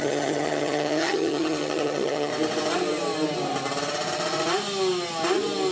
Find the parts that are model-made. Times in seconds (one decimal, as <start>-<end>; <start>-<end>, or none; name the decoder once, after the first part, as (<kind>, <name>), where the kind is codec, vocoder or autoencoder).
0.0-2.3 (vocoder, HiFi-GAN)